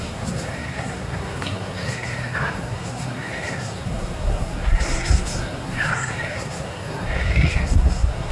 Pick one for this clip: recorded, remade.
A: remade